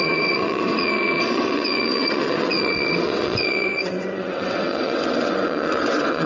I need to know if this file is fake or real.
fake